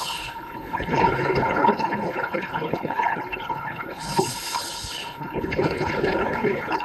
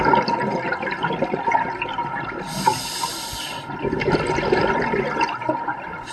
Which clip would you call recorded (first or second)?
second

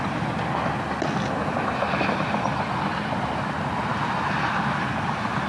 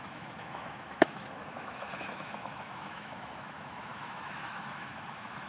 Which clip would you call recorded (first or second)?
first